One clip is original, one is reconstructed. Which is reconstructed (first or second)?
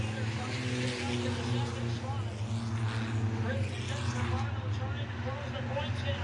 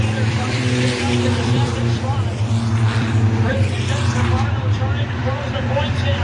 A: second